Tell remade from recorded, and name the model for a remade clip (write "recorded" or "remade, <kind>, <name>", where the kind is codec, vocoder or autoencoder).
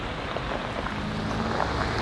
recorded